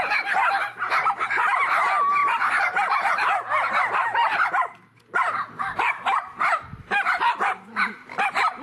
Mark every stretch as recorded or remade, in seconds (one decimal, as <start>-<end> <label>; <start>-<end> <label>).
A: 0.0-8.6 recorded